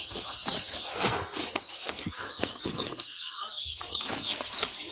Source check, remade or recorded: remade